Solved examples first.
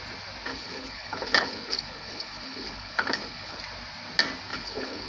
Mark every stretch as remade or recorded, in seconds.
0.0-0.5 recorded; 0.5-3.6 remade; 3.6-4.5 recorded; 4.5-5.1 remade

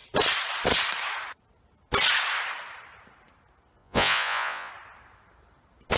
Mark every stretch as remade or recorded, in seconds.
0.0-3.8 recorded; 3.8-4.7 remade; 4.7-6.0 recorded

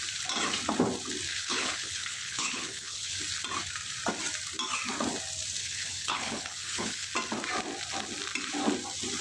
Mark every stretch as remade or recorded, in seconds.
0.0-1.3 recorded; 1.3-3.2 remade; 3.2-5.6 recorded; 5.6-7.1 remade; 7.1-9.2 recorded